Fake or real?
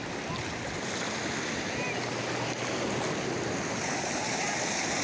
real